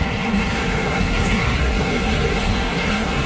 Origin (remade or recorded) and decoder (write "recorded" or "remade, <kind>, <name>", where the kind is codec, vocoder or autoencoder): remade, codec, SNAC